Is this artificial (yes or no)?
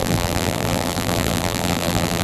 yes